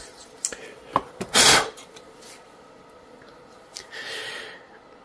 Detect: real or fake real